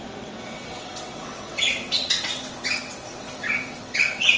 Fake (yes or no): yes